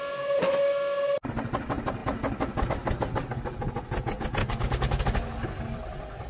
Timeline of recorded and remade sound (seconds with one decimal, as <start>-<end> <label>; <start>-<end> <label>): 0.0-4.4 recorded; 4.4-5.0 remade; 5.0-6.3 recorded